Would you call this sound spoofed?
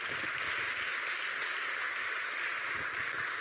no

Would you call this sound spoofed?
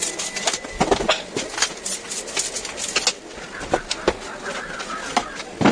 no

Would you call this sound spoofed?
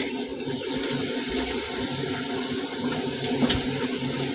yes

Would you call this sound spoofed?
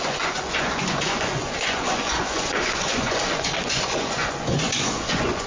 yes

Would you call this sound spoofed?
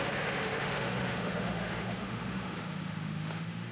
yes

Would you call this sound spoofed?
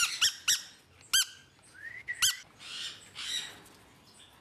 no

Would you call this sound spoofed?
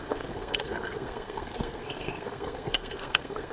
yes